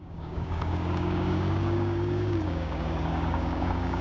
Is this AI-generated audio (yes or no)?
yes